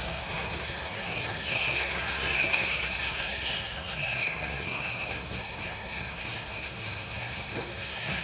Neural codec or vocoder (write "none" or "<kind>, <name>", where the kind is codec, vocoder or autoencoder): codec, SNAC